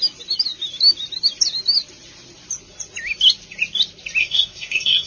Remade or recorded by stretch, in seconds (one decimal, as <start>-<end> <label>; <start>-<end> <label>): 0.0-4.2 recorded; 4.2-5.1 remade